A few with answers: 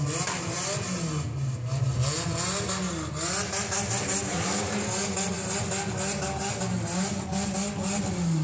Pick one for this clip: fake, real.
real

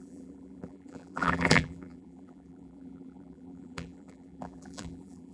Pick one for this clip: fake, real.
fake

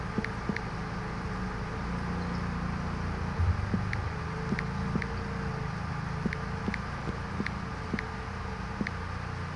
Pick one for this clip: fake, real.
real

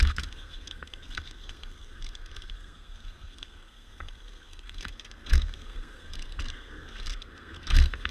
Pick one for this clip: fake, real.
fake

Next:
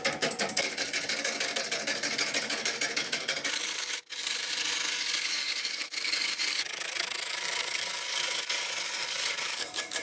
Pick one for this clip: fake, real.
fake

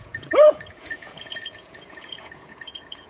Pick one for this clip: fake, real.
fake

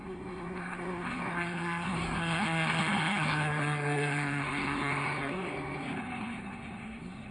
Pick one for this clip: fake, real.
fake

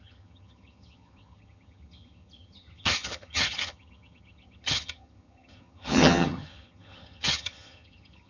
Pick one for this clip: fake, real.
fake